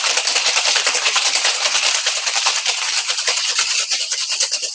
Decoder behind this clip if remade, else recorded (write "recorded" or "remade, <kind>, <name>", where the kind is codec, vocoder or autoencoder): remade, vocoder, BigVGAN v2